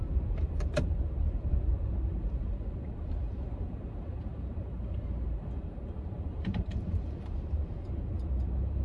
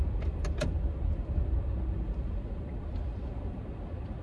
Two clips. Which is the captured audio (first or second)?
second